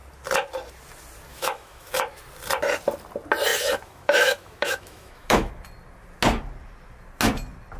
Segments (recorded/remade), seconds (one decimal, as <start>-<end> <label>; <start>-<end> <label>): 0.0-1.3 recorded; 1.3-1.9 remade; 1.9-3.5 recorded; 3.5-5.5 remade; 5.5-7.8 recorded